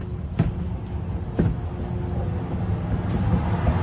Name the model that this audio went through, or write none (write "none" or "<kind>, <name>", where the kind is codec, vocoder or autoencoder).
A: none